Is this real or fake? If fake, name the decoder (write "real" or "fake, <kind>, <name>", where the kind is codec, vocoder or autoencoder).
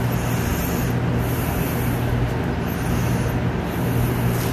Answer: real